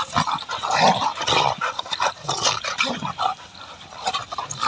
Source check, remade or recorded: remade